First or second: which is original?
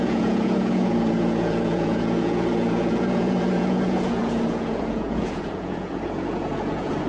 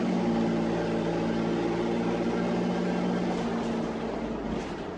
second